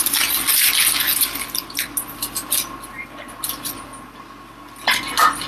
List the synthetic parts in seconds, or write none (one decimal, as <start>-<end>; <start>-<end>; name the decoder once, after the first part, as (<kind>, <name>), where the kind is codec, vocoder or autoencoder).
none